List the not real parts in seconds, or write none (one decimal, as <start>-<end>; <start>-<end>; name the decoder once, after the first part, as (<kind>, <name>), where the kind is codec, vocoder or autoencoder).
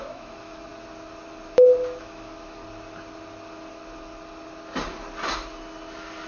0.0-0.7 (autoencoder, DAC-VAE); 2.0-2.6